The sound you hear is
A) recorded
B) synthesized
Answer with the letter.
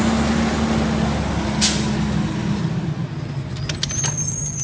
A